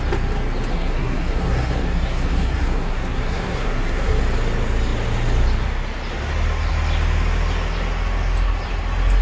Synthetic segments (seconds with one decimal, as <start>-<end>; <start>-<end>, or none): 0.7-4.2